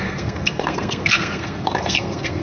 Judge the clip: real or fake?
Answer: fake